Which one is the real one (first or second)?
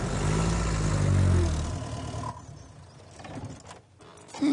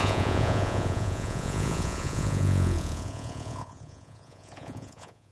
first